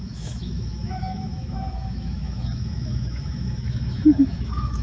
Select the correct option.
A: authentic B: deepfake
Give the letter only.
B